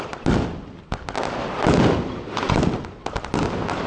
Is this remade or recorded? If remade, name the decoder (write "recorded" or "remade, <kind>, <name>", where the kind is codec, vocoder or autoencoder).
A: recorded